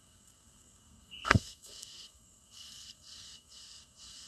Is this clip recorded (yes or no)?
no